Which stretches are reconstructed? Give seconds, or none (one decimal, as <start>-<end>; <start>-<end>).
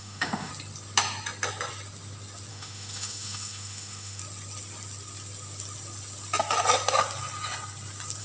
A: 0.0-0.5; 2.5-4.2